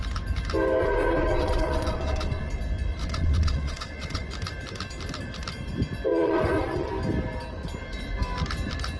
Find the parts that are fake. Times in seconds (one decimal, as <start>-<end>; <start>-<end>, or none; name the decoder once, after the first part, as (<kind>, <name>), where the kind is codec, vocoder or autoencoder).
0.8-2.5 (vocoder, Vocos); 3.0-4.3; 6.1-6.9